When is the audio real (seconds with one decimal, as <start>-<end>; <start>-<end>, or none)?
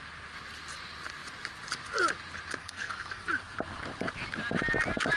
0.0-2.6; 3.3-5.2